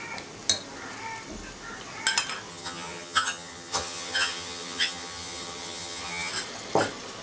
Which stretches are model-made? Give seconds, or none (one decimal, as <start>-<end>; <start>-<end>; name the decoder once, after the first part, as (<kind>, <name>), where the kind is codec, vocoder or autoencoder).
2.5-6.3 (vocoder, HiFi-GAN)